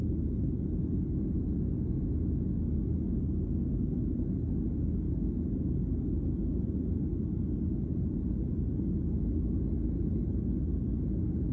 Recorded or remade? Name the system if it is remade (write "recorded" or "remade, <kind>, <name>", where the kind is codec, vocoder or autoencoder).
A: recorded